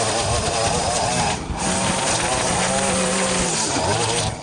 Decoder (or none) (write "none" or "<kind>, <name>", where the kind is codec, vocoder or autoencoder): none